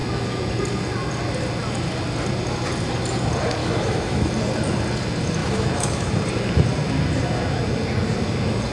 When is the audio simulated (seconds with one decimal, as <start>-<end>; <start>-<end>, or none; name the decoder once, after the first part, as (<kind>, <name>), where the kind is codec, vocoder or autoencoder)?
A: 3.6-4.3 (autoencoder, DAC-VAE); 5.4-6.2